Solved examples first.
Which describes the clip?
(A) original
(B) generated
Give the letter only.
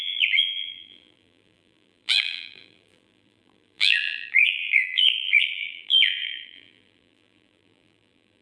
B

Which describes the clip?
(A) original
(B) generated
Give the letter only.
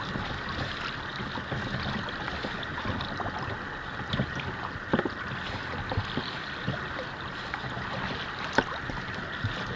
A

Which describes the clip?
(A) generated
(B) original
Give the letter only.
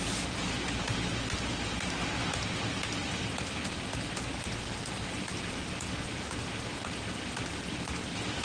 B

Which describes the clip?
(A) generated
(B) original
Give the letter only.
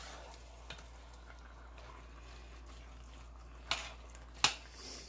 B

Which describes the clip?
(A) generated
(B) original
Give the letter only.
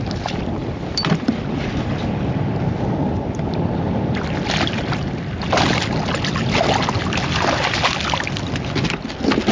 B